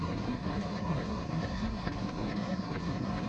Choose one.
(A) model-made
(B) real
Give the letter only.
A